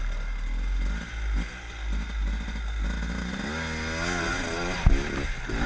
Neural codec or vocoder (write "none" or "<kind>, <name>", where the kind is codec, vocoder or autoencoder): none